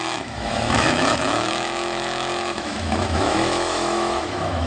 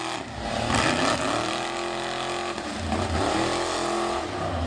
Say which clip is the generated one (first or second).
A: first